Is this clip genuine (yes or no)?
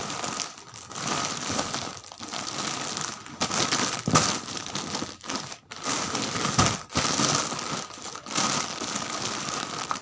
yes